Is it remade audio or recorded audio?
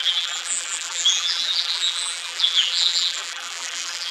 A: remade